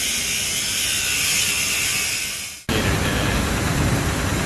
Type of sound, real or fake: real